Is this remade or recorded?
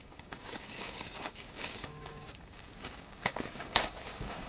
remade